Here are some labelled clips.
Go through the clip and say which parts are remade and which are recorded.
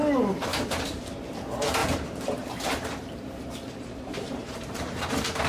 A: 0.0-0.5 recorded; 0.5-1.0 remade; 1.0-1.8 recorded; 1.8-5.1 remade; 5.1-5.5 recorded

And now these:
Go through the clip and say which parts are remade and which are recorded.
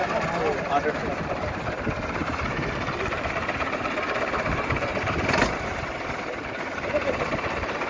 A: 0.0-1.0 recorded; 1.0-4.9 remade; 4.9-6.2 recorded; 6.2-7.9 remade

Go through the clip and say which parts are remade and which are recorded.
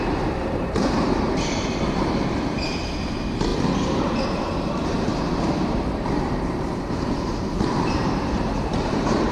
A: 0.0-3.5 remade; 3.5-4.0 recorded; 4.0-9.3 remade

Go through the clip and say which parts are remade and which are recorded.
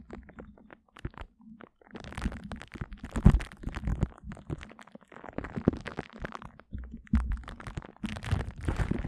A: 0.0-8.1 recorded; 8.1-9.1 remade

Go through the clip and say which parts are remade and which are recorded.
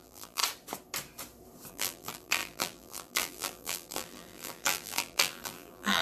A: 0.0-0.4 remade; 0.4-1.7 recorded; 1.7-6.0 remade